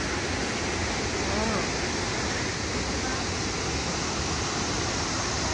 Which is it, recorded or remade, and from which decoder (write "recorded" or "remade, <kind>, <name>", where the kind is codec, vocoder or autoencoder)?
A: recorded